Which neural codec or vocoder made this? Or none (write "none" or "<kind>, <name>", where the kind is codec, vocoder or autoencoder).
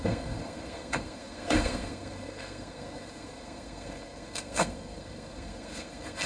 codec, SNAC